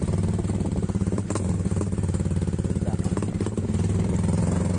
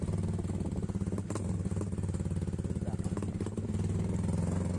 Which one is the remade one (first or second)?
first